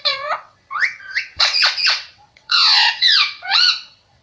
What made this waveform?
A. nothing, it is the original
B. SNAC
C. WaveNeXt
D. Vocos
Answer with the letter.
C